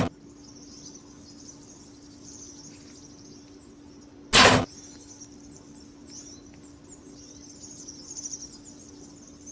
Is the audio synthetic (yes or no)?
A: no